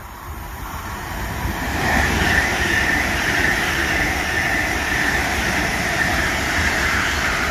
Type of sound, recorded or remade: remade